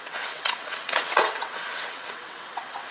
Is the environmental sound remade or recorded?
remade